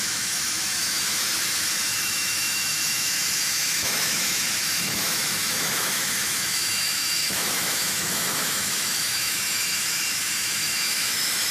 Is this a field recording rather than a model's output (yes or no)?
no